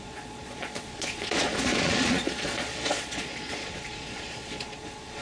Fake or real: fake